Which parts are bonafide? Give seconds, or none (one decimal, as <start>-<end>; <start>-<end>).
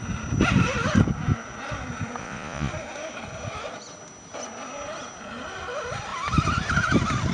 0.0-2.2; 2.7-7.3